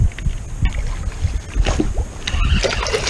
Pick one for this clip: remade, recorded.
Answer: recorded